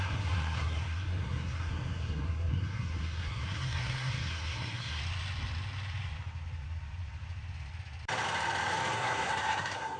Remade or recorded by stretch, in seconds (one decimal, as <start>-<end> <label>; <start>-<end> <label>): 0.0-5.0 remade; 5.0-8.9 recorded; 8.9-10.0 remade